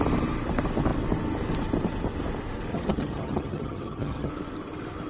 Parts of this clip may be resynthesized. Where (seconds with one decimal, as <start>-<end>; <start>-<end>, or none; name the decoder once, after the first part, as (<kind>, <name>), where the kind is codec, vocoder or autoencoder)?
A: 2.7-4.3 (vocoder, HiFi-GAN)